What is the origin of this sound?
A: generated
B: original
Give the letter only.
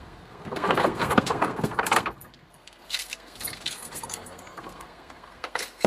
A